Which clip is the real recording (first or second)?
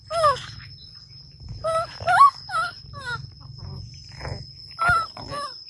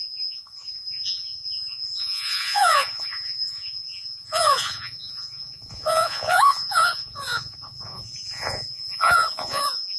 first